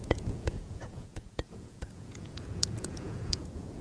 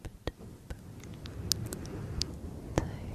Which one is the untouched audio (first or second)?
second